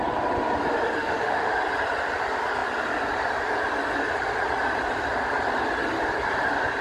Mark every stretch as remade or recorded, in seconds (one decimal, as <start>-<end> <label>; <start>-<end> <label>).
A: 0.0-1.0 recorded; 1.0-1.5 remade; 1.5-6.8 recorded